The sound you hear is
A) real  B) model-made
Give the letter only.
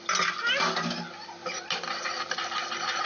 A